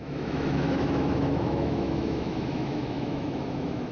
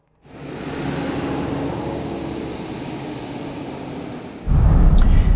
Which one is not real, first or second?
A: first